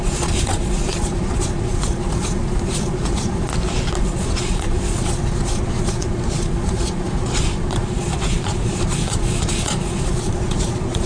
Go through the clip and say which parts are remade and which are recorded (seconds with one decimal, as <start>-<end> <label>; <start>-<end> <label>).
0.0-3.5 remade; 3.5-4.0 recorded; 4.0-11.1 remade